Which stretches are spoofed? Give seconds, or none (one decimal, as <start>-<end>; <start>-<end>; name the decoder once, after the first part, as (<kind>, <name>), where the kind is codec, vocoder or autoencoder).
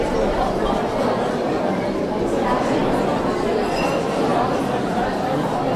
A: none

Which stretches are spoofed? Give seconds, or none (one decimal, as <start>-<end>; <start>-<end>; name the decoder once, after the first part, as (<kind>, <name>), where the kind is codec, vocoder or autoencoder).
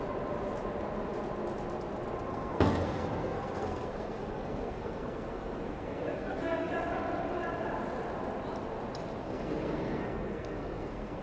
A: 2.3-6.7 (codec, SNAC); 9.2-11.2